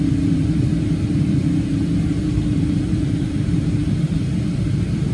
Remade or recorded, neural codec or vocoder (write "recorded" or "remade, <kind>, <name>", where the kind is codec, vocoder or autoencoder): remade, vocoder, BigVGAN v2